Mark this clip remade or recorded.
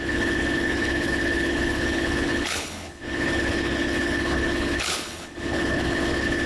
remade